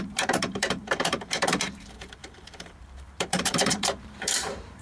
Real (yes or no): no